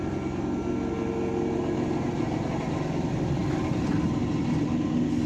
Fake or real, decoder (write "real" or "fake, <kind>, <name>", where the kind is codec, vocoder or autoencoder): real